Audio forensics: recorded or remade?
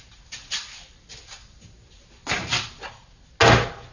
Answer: recorded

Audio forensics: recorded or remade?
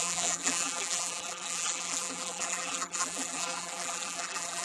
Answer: remade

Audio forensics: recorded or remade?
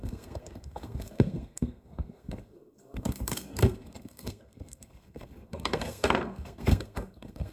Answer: remade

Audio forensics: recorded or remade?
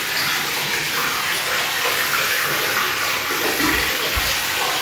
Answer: recorded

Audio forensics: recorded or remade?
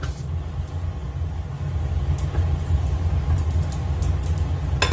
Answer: recorded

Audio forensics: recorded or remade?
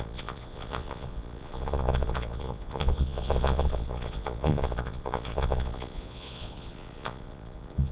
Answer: remade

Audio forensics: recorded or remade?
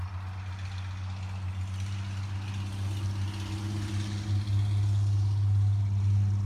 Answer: recorded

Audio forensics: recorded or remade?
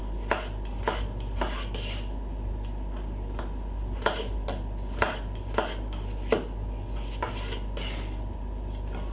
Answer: recorded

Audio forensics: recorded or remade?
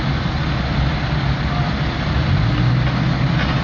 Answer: recorded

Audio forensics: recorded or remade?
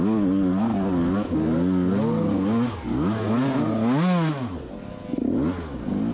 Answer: recorded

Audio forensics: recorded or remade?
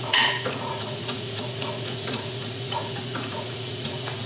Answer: remade